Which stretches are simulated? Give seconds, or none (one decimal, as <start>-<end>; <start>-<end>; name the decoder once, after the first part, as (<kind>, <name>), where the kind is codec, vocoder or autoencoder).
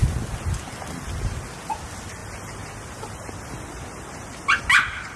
none